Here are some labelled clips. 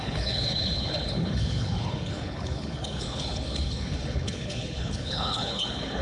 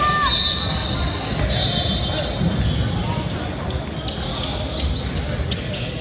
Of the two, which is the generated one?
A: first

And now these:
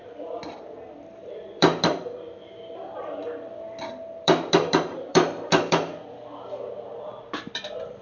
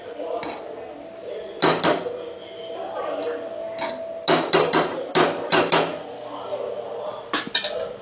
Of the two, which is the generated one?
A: first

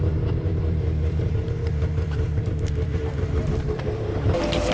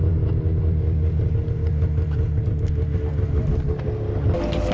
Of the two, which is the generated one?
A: first